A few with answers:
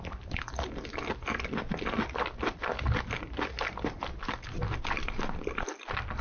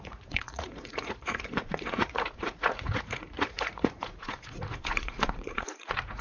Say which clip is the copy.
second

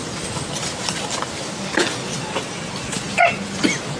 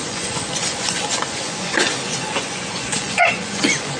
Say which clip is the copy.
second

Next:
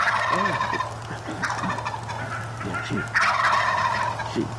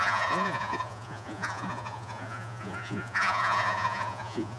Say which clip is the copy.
second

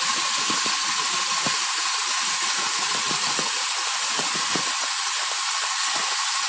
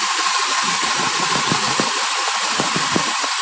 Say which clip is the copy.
first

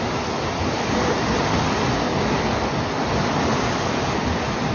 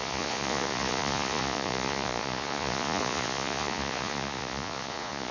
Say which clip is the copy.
second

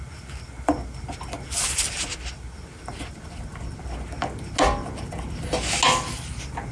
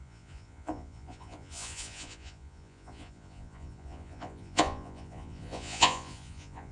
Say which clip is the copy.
second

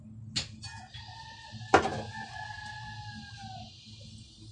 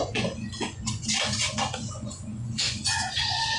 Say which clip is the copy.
second